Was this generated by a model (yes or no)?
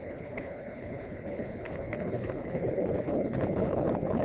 yes